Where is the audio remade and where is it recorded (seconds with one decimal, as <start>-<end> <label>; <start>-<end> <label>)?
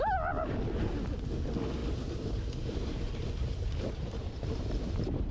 0.0-1.8 recorded; 1.8-5.3 remade